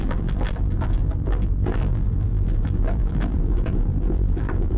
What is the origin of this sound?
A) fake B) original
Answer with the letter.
A